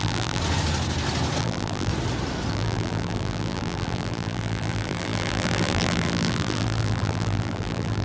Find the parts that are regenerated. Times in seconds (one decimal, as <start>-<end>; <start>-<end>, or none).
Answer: 0.0-0.4; 1.4-1.9; 2.5-8.0